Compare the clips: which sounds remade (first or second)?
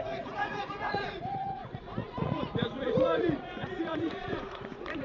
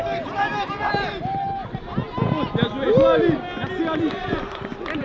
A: first